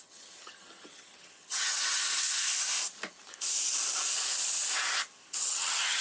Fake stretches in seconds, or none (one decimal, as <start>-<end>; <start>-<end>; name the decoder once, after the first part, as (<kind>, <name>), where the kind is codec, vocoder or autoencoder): 0.0-2.0 (vocoder, HiFi-GAN); 5.4-6.0